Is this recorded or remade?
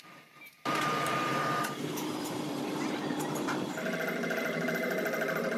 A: remade